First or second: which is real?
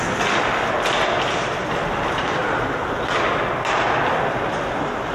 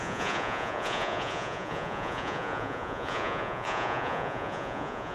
first